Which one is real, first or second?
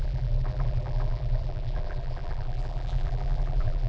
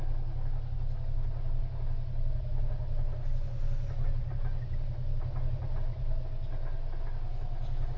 second